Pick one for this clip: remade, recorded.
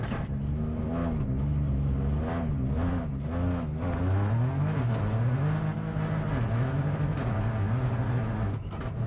recorded